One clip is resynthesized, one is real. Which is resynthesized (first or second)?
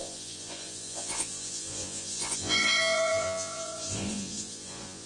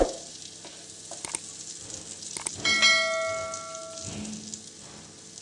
first